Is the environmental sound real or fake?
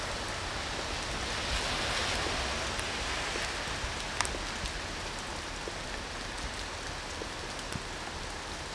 real